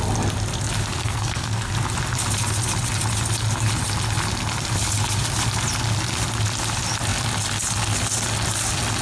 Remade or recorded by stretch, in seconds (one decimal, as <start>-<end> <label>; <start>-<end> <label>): 0.0-1.0 recorded; 1.0-1.7 remade; 1.7-9.0 recorded